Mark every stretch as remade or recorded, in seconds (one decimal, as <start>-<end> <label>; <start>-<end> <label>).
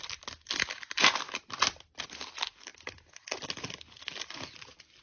0.0-5.0 recorded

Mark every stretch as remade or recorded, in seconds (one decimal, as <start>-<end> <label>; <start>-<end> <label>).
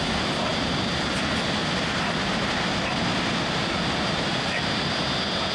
0.0-0.5 recorded; 0.5-1.1 remade; 1.1-1.6 recorded; 1.6-4.9 remade; 4.9-5.5 recorded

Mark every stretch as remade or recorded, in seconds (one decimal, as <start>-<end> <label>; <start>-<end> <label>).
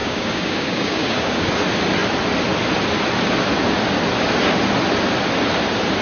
0.0-1.5 remade; 1.5-6.0 recorded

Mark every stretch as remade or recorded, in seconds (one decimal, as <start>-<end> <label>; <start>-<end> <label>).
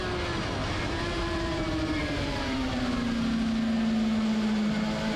0.0-0.6 recorded; 0.6-2.8 remade; 2.8-5.2 recorded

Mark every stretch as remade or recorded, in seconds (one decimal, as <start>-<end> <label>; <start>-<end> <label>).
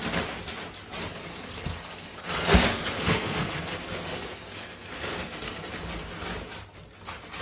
0.0-1.3 recorded; 1.3-5.7 remade; 5.7-7.4 recorded